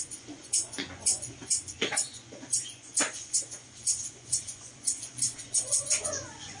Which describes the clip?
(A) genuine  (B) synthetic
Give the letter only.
B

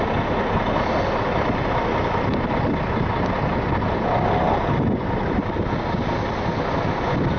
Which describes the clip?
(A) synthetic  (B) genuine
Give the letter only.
B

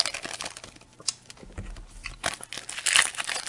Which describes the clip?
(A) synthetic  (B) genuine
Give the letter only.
B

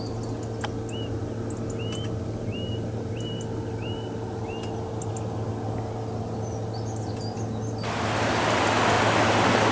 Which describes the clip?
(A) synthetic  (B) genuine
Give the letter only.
B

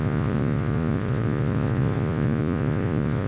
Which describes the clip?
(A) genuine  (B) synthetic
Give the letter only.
B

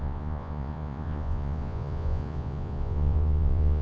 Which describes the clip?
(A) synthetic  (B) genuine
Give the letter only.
A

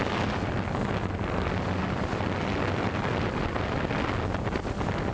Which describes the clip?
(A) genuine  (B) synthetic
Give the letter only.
A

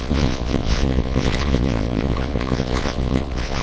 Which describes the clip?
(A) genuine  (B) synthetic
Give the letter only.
B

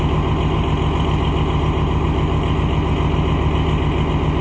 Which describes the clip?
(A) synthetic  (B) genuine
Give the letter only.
B